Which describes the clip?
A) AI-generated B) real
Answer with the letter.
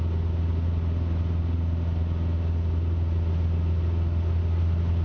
B